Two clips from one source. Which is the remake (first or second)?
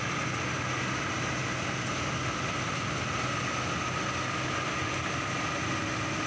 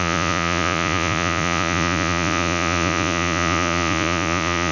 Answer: second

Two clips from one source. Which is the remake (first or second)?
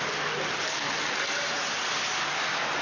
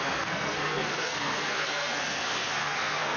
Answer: second